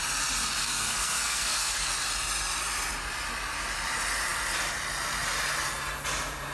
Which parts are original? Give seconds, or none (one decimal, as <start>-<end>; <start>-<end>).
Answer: 0.0-0.6; 1.9-6.5